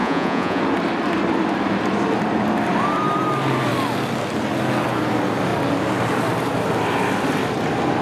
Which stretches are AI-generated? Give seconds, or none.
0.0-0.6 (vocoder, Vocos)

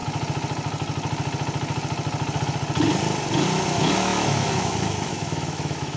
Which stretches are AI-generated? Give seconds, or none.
3.6-6.0 (autoencoder, DAC-VAE)

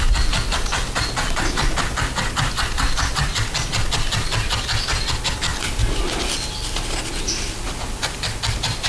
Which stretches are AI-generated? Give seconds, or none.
none

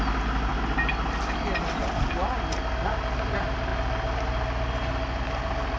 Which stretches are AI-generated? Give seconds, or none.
none

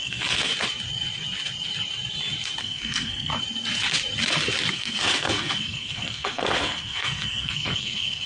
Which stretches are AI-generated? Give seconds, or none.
0.0-0.5 (codec, SNAC); 2.6-3.3; 4.7-8.3

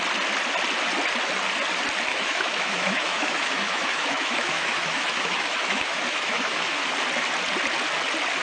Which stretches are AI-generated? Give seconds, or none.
2.1-6.8 (autoencoder, DAC-VAE)

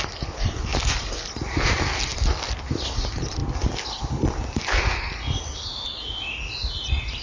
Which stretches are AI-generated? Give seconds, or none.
2.1-2.6 (vocoder, BigVGAN v2)